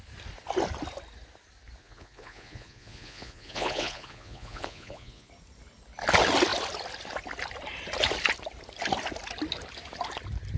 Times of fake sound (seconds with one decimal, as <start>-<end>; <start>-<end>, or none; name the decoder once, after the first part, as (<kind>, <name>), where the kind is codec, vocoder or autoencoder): 1.8-5.3 (vocoder, Vocos)